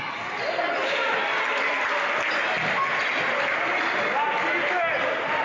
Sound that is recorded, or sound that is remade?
recorded